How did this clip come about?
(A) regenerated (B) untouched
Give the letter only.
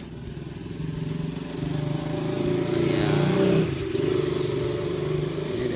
B